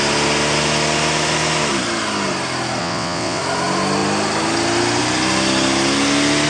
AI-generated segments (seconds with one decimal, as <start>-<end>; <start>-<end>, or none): 2.8-3.4